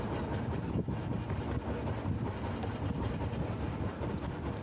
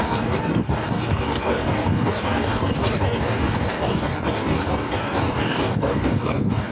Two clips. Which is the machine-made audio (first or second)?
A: second